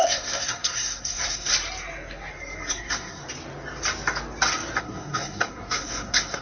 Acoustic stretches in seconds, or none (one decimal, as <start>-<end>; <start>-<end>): 1.5-2.7; 3.2-4.8